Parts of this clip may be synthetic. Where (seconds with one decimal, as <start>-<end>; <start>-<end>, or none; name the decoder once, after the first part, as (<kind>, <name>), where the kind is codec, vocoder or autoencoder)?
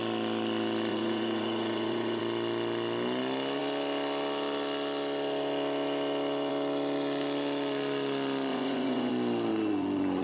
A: 0.9-2.2 (vocoder, Vocos); 8.5-9.1; 9.5-10.2